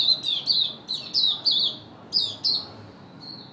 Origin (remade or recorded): recorded